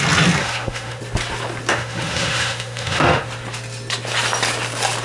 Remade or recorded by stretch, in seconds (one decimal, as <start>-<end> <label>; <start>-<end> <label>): 0.0-0.4 recorded; 0.4-1.0 remade; 1.0-1.7 recorded; 1.7-3.2 remade; 3.2-5.0 recorded